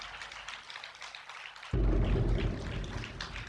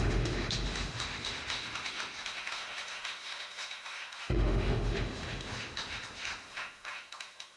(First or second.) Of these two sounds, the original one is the first